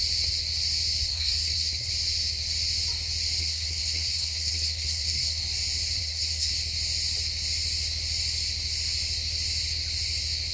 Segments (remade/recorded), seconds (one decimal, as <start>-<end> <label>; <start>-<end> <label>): 0.0-1.1 recorded; 1.1-1.9 remade; 1.9-3.4 recorded; 3.4-5.4 remade; 5.4-6.0 recorded; 6.0-6.5 remade; 6.5-10.5 recorded